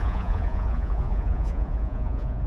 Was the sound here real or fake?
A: fake